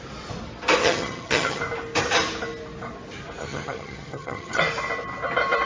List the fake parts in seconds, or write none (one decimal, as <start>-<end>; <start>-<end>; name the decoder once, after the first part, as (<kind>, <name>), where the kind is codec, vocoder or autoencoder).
0.8-1.6 (vocoder, HiFi-GAN); 3.4-4.6